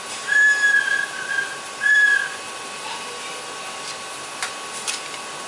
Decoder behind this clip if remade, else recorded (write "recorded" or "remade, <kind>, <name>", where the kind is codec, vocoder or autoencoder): remade, vocoder, BigVGAN v2